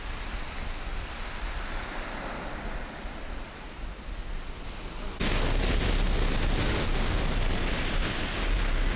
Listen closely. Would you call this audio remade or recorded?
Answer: recorded